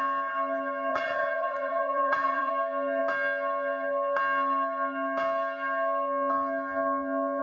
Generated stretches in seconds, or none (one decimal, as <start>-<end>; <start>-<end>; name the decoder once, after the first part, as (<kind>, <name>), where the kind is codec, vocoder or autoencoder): 0.9-2.5 (vocoder, BigVGAN v2)